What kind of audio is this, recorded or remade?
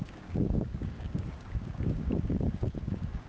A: remade